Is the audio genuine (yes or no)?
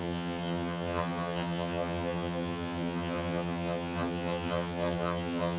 no